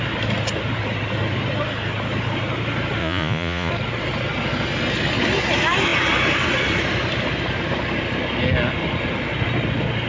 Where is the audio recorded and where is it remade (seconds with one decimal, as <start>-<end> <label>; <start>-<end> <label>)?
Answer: 0.0-3.0 recorded; 3.0-3.7 remade; 3.7-10.1 recorded